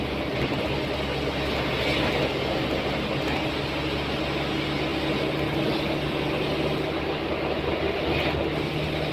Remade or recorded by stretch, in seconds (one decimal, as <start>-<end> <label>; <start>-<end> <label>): 0.0-9.1 recorded